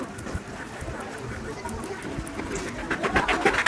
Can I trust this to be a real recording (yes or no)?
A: yes